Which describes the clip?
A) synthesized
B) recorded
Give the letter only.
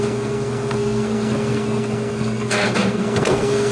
A